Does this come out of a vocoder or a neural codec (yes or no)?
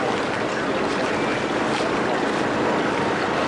no